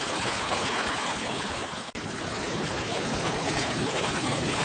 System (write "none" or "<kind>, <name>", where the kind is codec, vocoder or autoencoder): codec, HILCodec